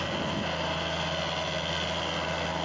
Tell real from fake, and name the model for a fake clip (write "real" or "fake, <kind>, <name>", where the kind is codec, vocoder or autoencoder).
real